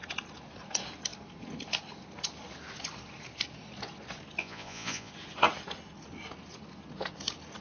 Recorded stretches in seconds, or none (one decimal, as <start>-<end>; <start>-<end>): 0.0-4.4; 5.1-7.6